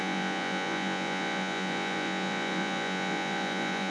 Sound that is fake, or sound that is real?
fake